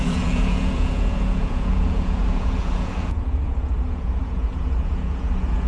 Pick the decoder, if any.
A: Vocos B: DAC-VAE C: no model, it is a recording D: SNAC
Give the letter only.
A